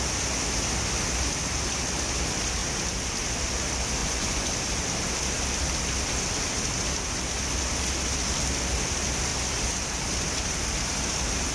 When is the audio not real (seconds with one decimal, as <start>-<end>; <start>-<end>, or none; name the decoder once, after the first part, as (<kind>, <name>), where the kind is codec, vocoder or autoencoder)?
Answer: 4.0-4.5 (vocoder, Vocos)